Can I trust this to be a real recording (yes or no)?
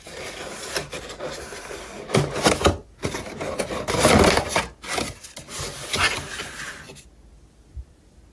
yes